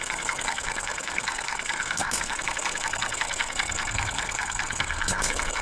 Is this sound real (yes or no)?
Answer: no